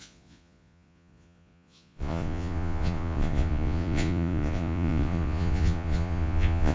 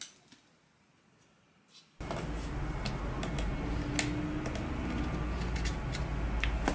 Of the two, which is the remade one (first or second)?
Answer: first